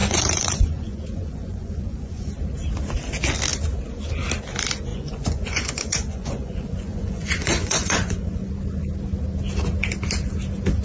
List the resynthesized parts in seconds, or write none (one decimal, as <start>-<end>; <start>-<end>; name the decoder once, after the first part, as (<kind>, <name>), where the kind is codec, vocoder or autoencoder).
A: 0.0-2.3 (vocoder, Vocos); 4.9-8.5